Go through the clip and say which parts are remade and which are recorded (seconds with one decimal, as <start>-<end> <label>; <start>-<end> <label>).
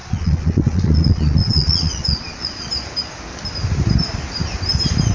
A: 0.0-2.7 remade; 2.7-5.1 recorded